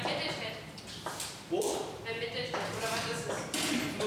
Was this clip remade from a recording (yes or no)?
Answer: no